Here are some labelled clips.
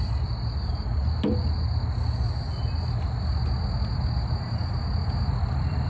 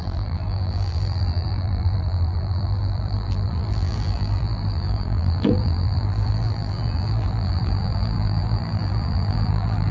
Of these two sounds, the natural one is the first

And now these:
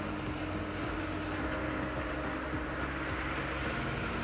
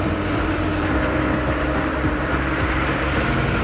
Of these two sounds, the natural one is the first